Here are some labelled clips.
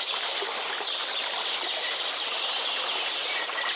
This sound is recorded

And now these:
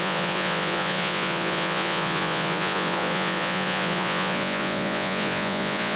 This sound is remade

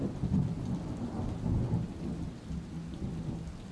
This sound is recorded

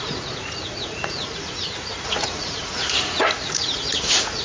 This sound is remade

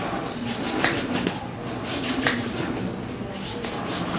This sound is recorded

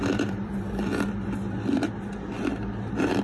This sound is recorded